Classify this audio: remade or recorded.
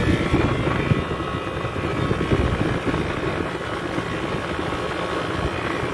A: recorded